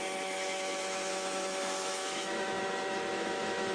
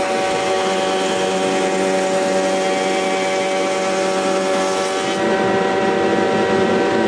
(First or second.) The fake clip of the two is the first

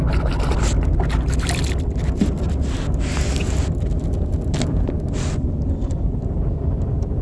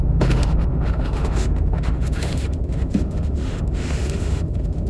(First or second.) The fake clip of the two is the second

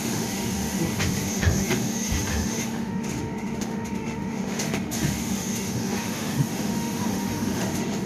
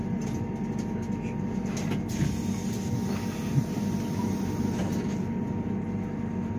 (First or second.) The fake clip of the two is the first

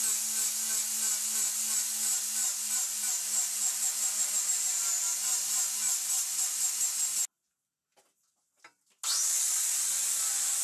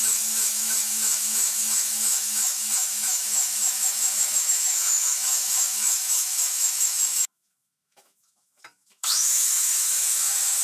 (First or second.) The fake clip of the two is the second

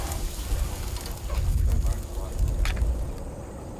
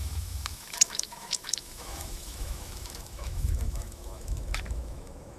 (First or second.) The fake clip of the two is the second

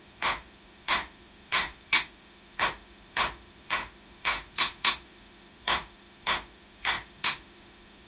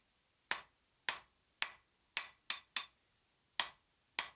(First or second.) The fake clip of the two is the first